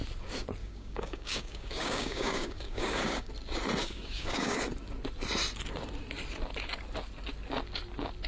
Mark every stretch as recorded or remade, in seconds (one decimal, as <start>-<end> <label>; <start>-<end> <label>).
0.0-0.6 recorded; 0.6-3.3 remade; 3.3-3.8 recorded; 3.8-4.6 remade; 4.6-8.3 recorded